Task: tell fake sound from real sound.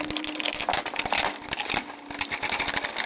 real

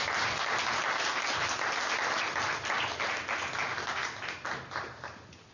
real